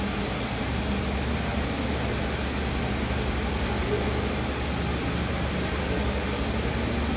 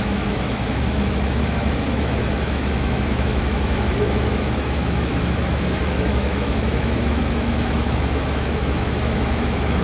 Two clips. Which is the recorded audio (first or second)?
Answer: first